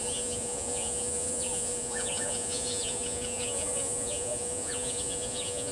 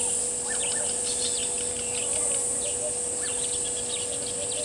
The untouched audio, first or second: second